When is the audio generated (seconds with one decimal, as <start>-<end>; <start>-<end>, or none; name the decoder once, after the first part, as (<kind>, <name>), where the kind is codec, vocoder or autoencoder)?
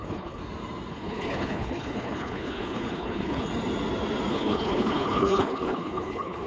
0.0-0.4 (codec, HILCodec); 0.9-3.5; 4.3-6.5